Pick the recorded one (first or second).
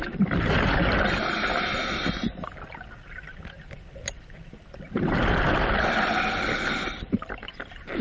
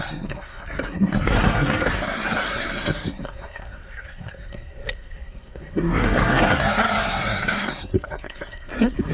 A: first